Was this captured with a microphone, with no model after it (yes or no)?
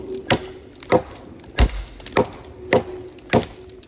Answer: yes